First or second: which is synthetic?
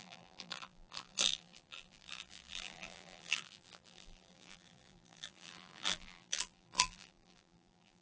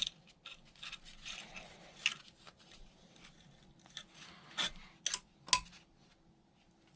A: first